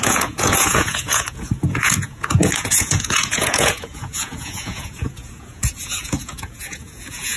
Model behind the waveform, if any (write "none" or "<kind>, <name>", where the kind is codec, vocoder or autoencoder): vocoder, Vocos